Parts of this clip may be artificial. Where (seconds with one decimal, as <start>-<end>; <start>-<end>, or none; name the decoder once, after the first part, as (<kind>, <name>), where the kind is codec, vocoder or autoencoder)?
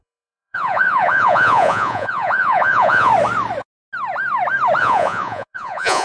0.0-3.1 (vocoder, Vocos); 4.8-6.0